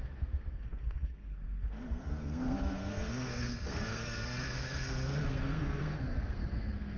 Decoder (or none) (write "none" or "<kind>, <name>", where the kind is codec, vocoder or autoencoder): codec, SNAC